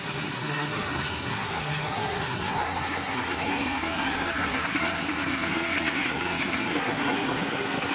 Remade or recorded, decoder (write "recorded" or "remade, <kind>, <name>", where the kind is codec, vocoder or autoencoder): remade, codec, SNAC